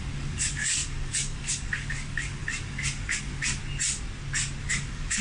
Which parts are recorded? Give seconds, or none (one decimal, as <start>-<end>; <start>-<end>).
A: 3.6-4.6